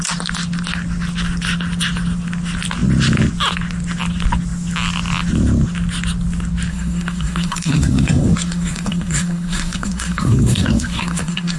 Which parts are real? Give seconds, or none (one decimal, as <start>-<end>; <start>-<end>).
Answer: 0.0-6.7